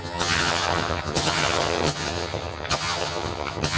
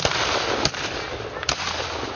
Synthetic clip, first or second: first